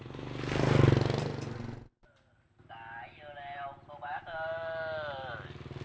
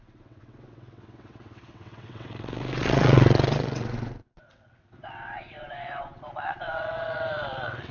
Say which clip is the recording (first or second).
first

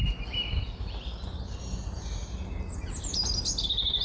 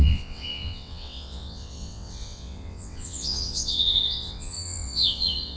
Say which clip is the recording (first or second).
first